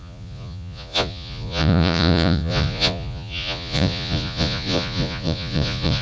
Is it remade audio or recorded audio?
remade